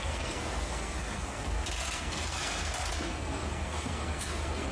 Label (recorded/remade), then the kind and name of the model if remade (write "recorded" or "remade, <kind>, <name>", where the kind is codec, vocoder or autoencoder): remade, codec, SNAC